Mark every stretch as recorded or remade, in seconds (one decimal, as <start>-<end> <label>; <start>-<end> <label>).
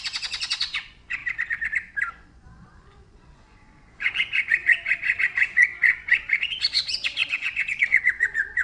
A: 0.0-1.2 remade; 1.2-2.1 recorded; 2.1-8.6 remade